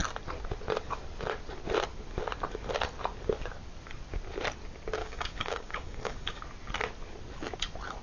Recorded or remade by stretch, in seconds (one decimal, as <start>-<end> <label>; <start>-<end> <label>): 0.0-5.0 recorded; 5.0-6.4 remade; 6.4-8.0 recorded